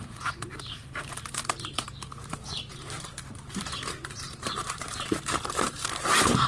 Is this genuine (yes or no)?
no